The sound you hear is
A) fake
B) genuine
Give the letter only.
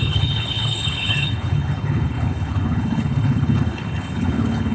A